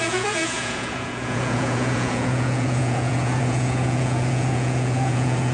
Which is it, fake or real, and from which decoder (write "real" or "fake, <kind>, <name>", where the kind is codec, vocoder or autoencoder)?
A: fake, vocoder, Vocos